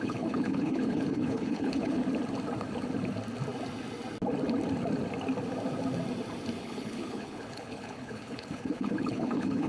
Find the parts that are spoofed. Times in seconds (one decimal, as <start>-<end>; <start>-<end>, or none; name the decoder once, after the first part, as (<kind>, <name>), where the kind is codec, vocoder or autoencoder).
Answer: 0.0-2.0 (codec, HILCodec); 6.6-9.7